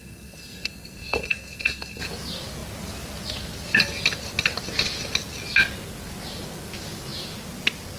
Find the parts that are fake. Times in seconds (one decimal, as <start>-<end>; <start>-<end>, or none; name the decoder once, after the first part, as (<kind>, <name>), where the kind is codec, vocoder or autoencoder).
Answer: 0.0-2.0 (codec, SNAC)